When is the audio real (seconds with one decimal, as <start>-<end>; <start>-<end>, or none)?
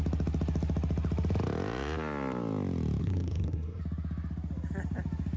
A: 0.0-3.0; 3.8-5.4